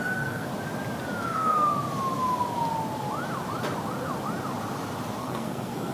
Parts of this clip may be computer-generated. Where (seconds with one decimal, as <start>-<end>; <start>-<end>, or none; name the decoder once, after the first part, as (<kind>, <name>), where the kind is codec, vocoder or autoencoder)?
0.0-0.5 (codec, SNAC); 1.2-1.7; 5.2-5.9